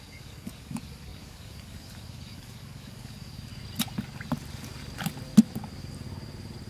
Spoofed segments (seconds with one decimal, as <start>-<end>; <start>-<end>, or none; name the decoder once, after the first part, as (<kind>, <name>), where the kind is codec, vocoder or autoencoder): 0.0-3.5 (codec, DAC)